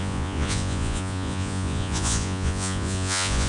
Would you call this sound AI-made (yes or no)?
yes